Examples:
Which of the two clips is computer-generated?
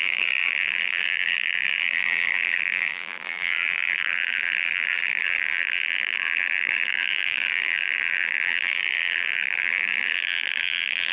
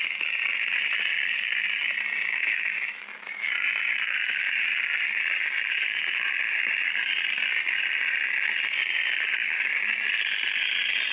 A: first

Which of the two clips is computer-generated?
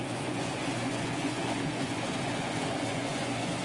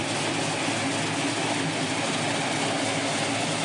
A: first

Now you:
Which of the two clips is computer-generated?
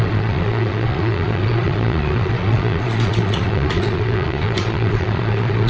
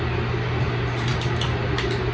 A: first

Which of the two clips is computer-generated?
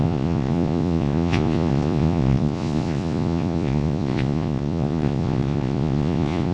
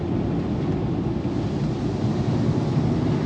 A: first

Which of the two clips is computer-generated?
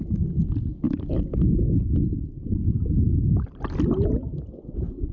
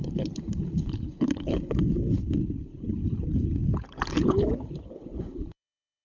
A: second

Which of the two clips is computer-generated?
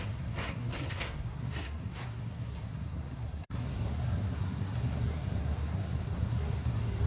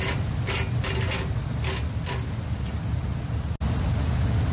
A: first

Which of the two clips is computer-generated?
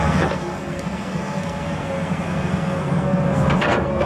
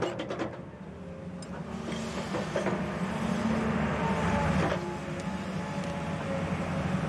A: first